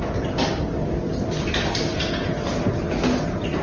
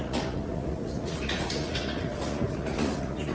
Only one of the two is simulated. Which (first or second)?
second